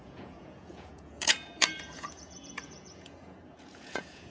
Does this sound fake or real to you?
fake